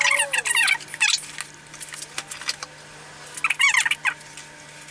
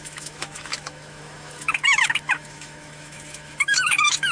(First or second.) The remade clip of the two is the second